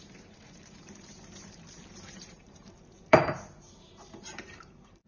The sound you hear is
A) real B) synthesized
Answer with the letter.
B